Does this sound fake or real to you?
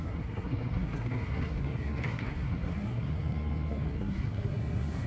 fake